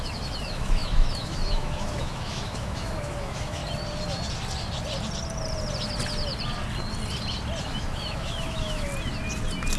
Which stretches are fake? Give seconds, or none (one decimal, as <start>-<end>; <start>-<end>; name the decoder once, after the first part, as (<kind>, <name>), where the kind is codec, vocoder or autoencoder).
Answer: 0.0-3.6 (autoencoder, DAC-VAE); 7.6-8.9